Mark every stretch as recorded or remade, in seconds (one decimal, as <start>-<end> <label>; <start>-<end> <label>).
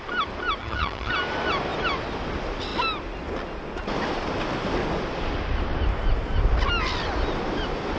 0.0-0.6 recorded; 0.6-1.1 remade; 1.1-8.0 recorded